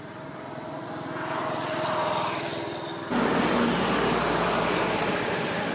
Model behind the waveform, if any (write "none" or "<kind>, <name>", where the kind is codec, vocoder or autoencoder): none